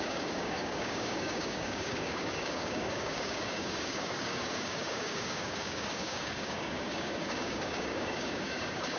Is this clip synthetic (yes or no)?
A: yes